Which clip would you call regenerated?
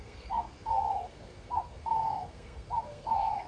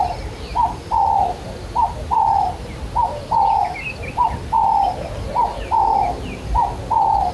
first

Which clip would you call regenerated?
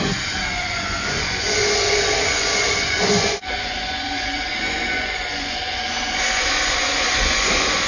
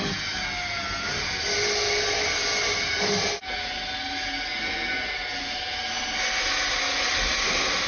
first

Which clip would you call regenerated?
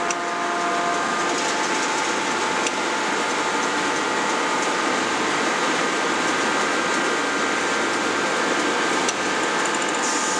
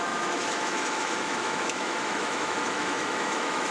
second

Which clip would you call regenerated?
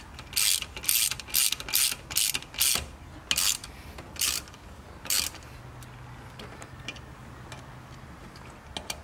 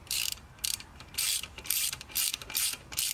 second